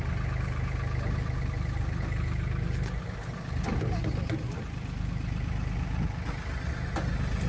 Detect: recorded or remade recorded